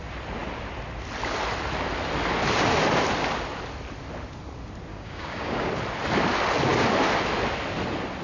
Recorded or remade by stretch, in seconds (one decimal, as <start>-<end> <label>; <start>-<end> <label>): 0.0-4.9 recorded; 4.9-5.7 remade; 5.7-8.2 recorded